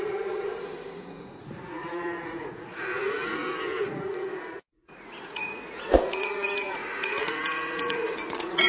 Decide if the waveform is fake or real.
fake